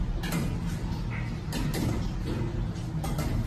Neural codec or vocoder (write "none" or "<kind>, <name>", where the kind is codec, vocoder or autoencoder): none